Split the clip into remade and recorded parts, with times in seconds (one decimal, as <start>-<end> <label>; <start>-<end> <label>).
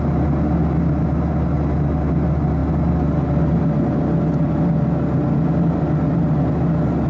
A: 0.0-7.1 recorded